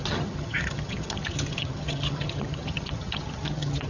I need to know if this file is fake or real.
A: fake